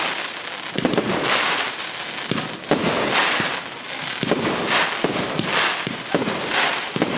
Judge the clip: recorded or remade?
recorded